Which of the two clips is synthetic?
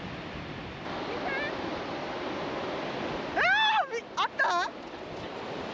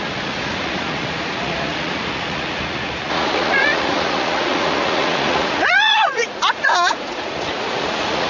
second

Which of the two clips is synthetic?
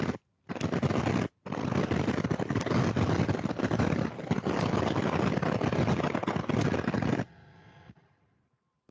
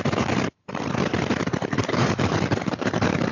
second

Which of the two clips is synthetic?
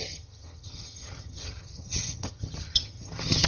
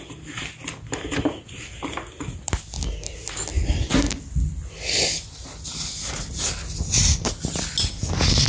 first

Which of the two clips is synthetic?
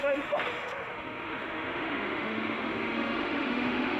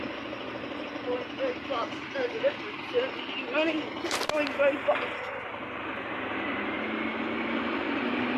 first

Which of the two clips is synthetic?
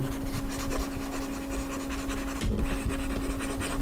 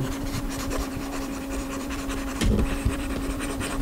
second